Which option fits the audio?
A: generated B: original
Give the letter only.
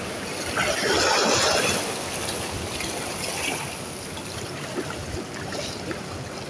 B